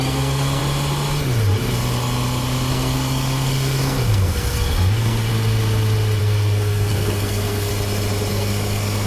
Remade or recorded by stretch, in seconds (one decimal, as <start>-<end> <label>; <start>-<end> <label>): 0.0-0.6 remade; 0.6-2.7 recorded; 2.7-5.3 remade; 5.3-6.2 recorded; 6.2-7.7 remade; 7.7-8.3 recorded; 8.3-9.1 remade